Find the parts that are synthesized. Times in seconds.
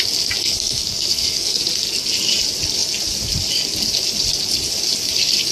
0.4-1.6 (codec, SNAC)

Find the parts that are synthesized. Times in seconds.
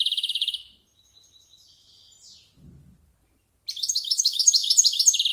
0.0-0.7 (autoencoder, DAC-VAE); 3.9-4.6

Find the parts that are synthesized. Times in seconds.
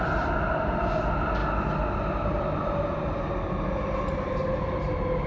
none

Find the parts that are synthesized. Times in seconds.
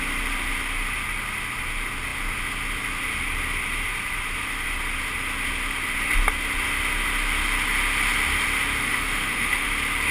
8.8-9.7 (autoencoder, DAC-VAE)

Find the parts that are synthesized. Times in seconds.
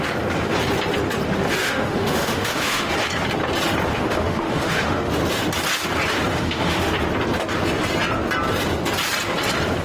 1.6-2.9 (autoencoder, DAC-VAE); 3.9-5.1; 6.3-6.9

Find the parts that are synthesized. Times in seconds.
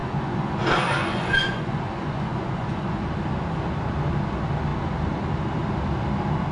0.0-0.5 (vocoder, Vocos); 1.0-3.0